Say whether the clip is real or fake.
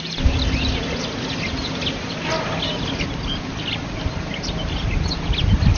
real